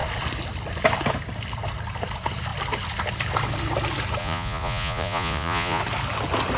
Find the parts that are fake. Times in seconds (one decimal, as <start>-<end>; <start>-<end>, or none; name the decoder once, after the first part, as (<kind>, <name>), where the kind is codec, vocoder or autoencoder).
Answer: 4.2-5.8 (vocoder, Vocos)